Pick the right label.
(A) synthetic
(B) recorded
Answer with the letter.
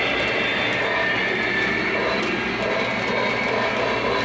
B